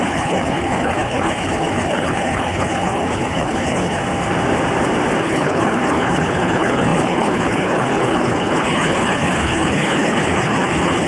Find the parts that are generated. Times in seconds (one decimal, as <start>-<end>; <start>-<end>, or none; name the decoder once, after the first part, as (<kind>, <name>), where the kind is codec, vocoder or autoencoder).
0.0-4.0 (codec, HILCodec); 5.2-11.1